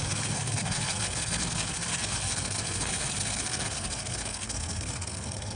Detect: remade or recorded remade